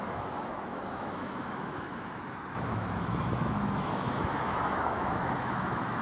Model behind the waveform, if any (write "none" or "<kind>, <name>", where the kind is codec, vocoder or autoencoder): autoencoder, DAC-VAE